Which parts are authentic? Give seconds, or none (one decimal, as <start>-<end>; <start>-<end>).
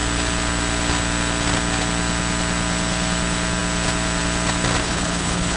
0.0-4.8